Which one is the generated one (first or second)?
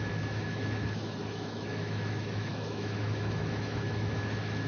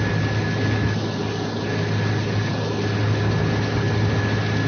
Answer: first